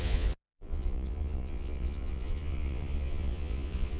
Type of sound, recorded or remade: remade